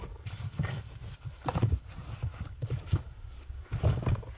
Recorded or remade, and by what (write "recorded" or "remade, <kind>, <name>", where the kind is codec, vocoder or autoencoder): remade, vocoder, BigVGAN v2